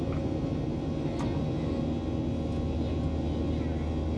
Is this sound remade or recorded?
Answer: recorded